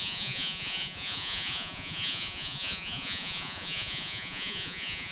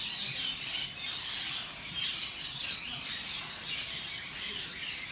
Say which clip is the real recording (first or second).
second